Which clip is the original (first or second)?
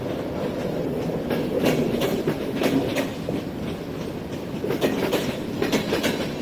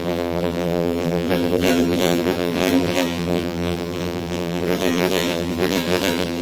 first